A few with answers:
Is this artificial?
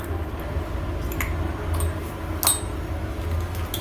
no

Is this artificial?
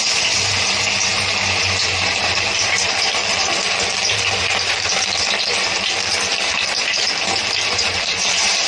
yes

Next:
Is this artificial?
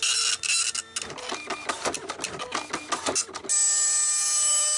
no